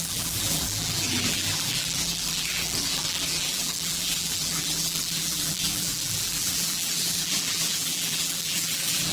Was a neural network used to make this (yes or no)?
yes